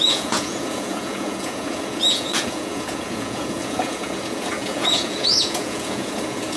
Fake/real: fake